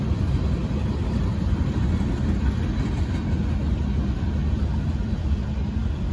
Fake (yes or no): no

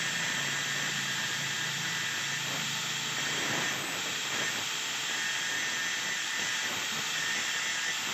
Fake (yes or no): no